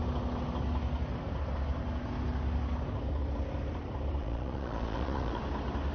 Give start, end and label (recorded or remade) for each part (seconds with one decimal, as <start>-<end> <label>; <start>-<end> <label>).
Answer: 0.0-4.2 recorded; 4.2-5.4 remade; 5.4-5.9 recorded